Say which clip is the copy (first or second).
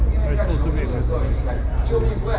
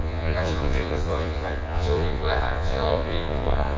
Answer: second